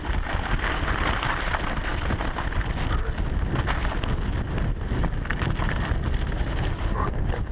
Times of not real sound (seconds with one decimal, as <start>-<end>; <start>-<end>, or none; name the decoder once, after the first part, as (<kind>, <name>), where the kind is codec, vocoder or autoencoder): none